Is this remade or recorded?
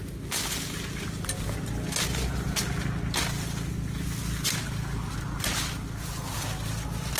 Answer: recorded